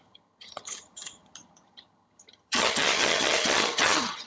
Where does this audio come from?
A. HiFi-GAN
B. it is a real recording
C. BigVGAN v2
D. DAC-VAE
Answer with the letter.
A